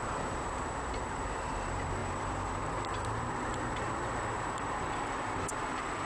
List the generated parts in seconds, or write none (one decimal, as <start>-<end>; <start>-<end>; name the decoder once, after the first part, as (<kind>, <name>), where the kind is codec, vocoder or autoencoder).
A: 0.0-6.1 (vocoder, BigVGAN v2)